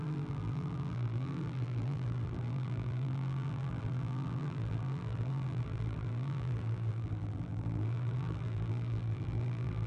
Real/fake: fake